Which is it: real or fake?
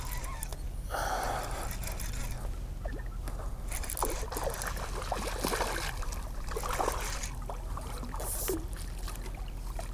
real